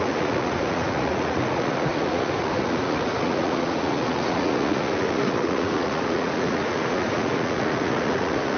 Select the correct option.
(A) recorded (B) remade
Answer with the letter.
B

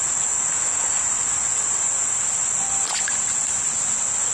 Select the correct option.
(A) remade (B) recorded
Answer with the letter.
B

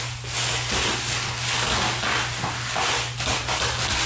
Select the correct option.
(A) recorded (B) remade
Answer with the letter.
A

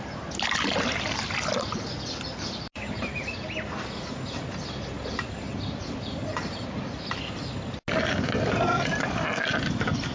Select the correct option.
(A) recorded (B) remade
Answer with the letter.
A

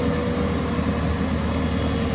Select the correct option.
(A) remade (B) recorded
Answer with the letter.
B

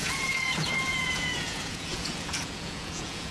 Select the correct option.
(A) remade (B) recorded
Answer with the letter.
A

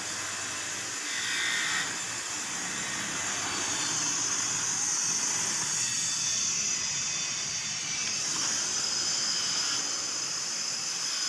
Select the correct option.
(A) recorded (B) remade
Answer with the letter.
A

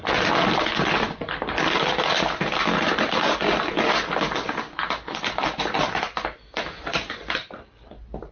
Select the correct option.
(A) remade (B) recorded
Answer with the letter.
B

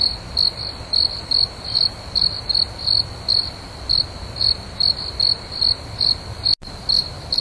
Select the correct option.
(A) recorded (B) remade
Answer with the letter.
A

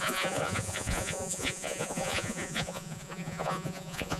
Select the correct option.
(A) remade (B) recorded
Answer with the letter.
A